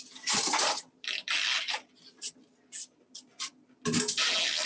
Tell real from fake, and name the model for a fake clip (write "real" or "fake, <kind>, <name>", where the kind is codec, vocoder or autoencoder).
real